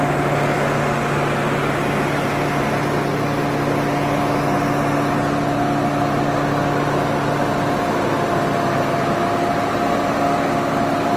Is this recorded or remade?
recorded